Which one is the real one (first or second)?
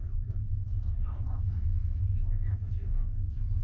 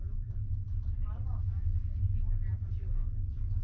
second